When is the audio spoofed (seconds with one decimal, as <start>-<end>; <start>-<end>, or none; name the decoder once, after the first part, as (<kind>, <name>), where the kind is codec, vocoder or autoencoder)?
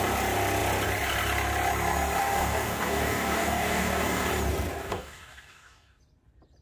2.2-4.3 (codec, DAC); 4.8-6.0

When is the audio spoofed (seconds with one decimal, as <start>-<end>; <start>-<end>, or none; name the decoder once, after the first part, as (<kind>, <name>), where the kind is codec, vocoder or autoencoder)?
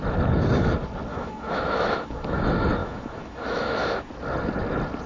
1.1-2.4 (autoencoder, DAC-VAE); 2.8-4.1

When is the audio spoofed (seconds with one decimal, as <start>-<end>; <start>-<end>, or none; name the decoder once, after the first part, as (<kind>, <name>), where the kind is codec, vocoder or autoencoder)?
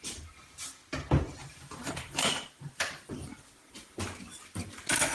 1.3-3.3 (vocoder, BigVGAN v2)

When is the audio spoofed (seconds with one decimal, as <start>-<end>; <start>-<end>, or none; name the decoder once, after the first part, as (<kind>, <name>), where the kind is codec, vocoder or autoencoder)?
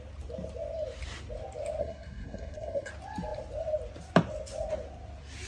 1.8-2.9 (codec, SNAC)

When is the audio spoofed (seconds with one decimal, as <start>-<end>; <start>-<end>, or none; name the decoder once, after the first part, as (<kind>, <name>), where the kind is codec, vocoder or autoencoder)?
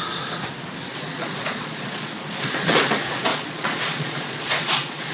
0.9-2.9 (vocoder, Vocos); 3.3-5.1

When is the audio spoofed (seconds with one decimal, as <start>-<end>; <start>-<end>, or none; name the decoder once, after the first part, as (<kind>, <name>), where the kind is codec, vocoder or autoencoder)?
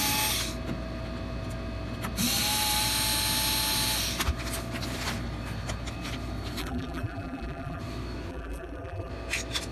6.6-7.8 (vocoder, BigVGAN v2); 8.3-9.1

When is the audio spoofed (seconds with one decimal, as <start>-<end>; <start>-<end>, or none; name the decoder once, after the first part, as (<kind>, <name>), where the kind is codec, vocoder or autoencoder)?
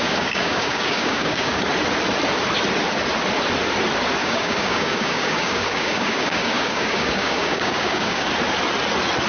0.0-1.6 (codec, DAC); 4.2-8.3